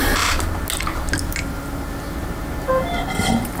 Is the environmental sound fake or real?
real